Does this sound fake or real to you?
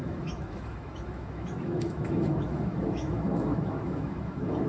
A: fake